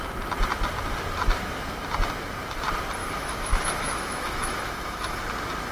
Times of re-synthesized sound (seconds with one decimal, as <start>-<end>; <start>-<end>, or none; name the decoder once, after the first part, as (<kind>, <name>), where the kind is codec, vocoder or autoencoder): 3.0-5.2 (autoencoder, DAC-VAE)